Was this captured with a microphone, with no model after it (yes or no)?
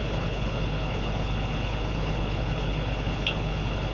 no